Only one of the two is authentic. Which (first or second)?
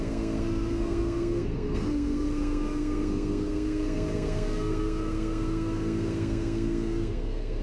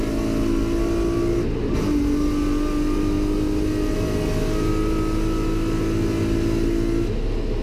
second